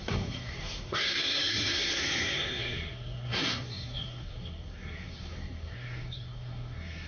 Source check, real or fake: fake